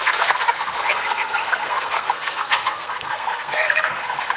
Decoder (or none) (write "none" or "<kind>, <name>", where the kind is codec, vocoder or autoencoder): codec, SNAC